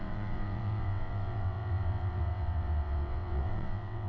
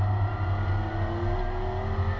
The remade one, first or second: first